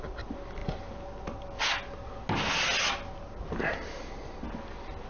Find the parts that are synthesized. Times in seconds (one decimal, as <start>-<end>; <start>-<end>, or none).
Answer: none